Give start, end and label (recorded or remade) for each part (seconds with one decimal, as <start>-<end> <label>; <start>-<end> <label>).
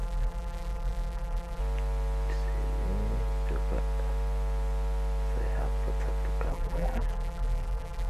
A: 0.0-1.6 remade; 1.6-6.5 recorded; 6.5-8.1 remade